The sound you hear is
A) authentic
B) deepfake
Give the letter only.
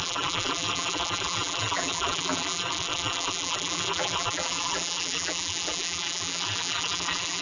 B